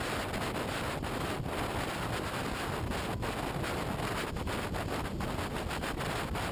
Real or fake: real